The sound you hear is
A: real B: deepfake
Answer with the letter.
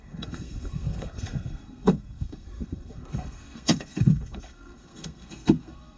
B